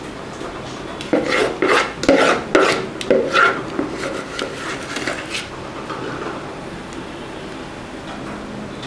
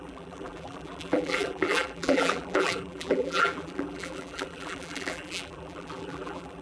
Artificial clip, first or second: second